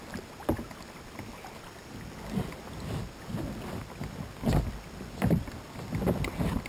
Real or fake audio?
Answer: real